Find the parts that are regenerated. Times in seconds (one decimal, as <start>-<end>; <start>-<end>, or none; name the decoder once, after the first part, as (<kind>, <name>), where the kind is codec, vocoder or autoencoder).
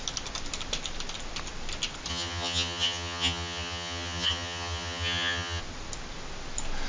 2.1-5.6 (vocoder, HiFi-GAN)